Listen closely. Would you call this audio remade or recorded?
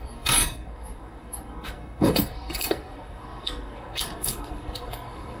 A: remade